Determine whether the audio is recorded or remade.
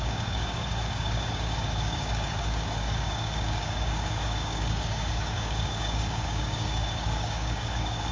remade